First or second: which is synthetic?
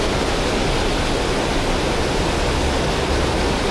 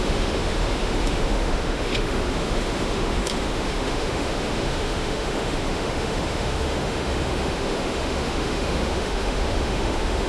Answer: second